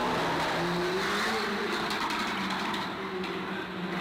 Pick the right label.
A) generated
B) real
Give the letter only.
B